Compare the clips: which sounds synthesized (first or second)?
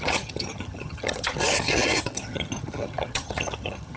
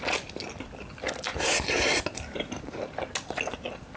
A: first